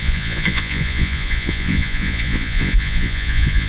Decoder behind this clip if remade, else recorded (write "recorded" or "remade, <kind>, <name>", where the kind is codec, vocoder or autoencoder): remade, vocoder, Vocos